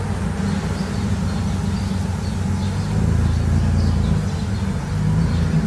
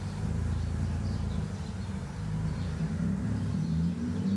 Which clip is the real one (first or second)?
first